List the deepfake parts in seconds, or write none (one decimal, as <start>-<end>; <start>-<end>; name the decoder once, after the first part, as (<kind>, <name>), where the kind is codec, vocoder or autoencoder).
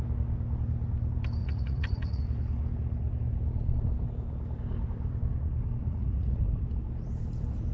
1.4-2.2 (vocoder, Vocos); 5.8-6.4